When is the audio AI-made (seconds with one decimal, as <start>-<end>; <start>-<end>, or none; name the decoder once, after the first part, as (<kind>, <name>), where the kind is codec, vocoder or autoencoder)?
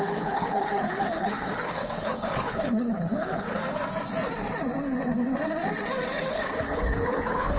0.0-3.6 (codec, HILCodec); 6.3-7.6